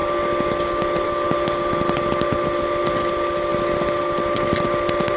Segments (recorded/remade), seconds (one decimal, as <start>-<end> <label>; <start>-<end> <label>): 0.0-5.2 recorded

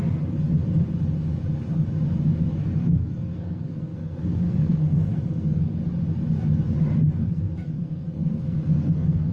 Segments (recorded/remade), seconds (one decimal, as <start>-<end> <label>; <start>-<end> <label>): 0.0-2.5 recorded; 2.5-5.8 remade; 5.8-7.2 recorded; 7.2-9.3 remade

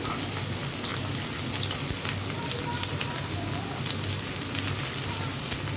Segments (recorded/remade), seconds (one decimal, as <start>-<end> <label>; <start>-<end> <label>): 0.0-5.8 recorded

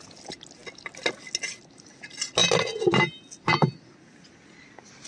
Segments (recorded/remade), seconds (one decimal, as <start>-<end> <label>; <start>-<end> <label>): 0.0-5.1 recorded